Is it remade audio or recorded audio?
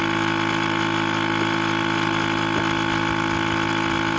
recorded